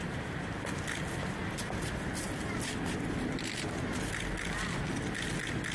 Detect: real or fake real